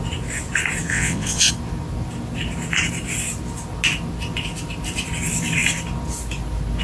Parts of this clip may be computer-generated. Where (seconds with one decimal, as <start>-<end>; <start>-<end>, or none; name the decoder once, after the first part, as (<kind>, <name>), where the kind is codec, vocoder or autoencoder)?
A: 0.9-1.5 (vocoder, WaveNeXt)